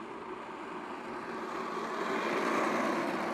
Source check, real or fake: real